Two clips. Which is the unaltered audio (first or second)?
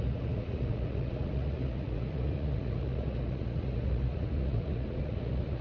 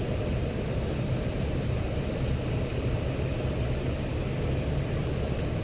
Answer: second